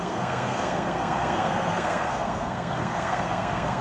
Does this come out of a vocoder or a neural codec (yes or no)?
yes